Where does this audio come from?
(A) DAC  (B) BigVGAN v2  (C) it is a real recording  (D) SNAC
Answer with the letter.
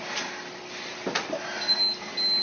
C